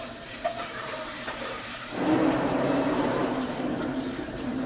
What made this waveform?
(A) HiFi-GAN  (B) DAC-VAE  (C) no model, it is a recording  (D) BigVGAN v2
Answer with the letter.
D